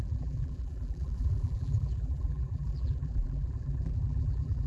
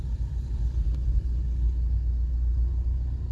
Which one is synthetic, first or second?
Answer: first